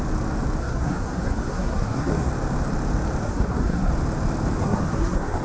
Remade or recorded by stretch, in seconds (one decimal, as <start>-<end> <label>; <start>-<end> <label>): 0.0-0.6 recorded; 0.6-2.3 remade; 2.3-3.2 recorded; 3.2-3.9 remade; 3.9-4.6 recorded; 4.6-5.4 remade